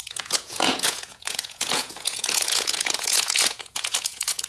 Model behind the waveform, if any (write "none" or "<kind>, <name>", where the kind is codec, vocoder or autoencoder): vocoder, Vocos